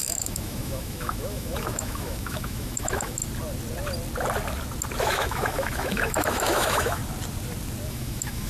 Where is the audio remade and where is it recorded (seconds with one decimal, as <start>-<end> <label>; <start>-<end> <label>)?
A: 0.0-3.2 remade; 3.2-5.0 recorded; 5.0-7.0 remade; 7.0-7.9 recorded; 7.9-8.5 remade